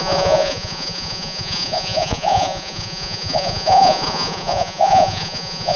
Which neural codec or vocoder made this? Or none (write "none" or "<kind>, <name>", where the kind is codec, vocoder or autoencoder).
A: vocoder, Vocos